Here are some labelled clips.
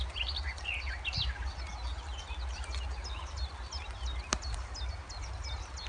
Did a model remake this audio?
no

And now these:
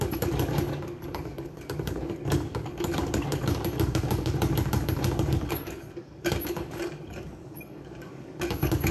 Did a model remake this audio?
yes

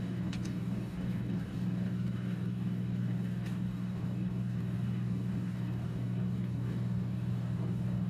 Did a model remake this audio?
yes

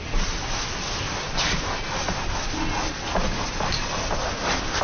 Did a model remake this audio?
no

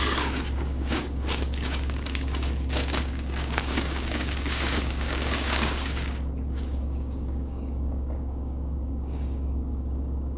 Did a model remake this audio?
yes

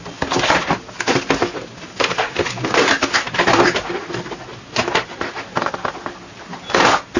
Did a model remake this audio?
no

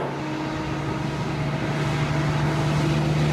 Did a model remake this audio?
no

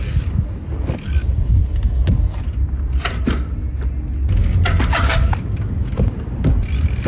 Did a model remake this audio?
no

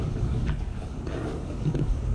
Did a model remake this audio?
yes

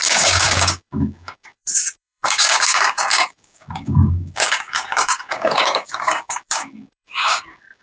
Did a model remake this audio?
yes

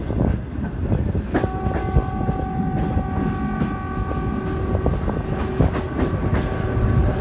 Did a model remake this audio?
no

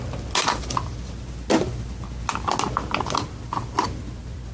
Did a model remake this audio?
no